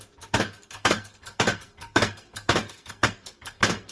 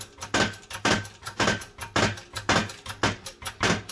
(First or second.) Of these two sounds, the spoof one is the first